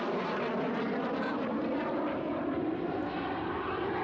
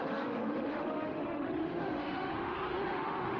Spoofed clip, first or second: second